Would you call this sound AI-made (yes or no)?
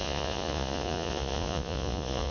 yes